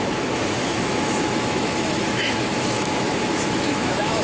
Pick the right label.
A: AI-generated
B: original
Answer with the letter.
A